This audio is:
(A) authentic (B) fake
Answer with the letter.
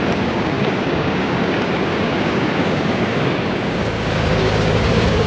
B